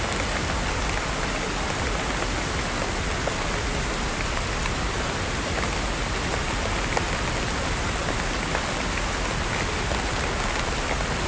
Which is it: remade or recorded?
recorded